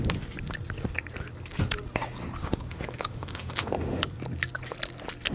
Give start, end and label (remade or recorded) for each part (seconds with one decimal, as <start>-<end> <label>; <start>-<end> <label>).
0.0-2.4 recorded; 2.4-4.0 remade; 4.0-5.3 recorded